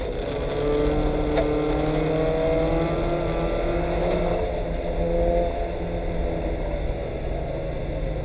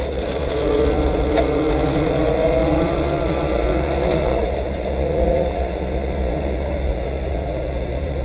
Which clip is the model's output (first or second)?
second